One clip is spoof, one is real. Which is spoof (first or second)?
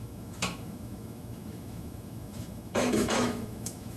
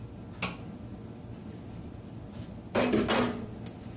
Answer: first